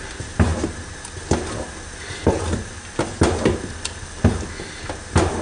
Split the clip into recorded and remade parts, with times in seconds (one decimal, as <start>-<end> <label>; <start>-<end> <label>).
0.0-5.4 recorded